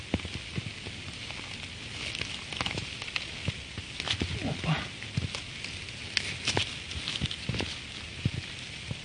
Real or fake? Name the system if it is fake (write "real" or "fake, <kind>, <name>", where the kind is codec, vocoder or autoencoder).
real